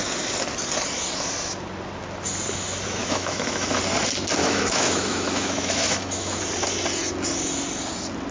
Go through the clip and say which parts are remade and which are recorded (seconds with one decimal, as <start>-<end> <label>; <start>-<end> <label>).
0.0-3.0 recorded; 3.0-3.8 remade; 3.8-4.4 recorded; 4.4-6.4 remade; 6.4-8.3 recorded